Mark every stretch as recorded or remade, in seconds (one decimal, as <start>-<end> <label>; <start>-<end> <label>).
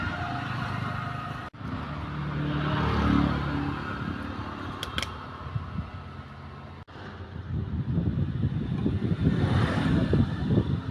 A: 0.0-9.2 recorded; 9.2-9.9 remade; 9.9-10.9 recorded